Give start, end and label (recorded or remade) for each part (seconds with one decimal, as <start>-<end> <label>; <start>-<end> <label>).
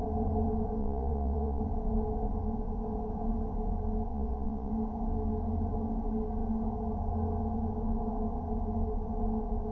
0.0-0.8 recorded; 0.8-1.6 remade; 1.6-4.1 recorded; 4.1-4.7 remade; 4.7-9.7 recorded